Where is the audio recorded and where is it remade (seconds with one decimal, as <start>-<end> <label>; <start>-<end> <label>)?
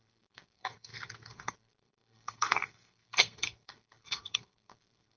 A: 0.0-5.2 remade